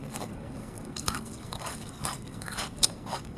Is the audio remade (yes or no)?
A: yes